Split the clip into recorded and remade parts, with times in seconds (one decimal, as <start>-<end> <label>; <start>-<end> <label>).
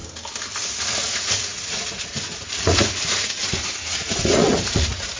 0.0-1.0 recorded; 1.0-5.2 remade